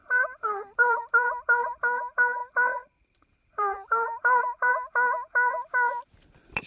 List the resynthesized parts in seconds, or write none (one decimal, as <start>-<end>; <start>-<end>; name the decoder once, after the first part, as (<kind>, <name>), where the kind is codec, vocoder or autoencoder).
0.0-1.7 (vocoder, BigVGAN v2); 2.4-4.7